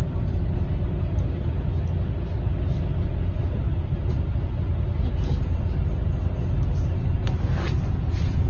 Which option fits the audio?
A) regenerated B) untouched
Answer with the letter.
B